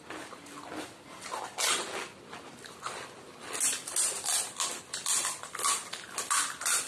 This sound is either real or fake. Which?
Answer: real